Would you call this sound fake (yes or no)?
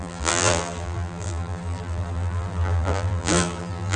yes